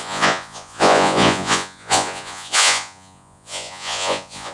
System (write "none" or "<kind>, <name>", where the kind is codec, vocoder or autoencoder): vocoder, Vocos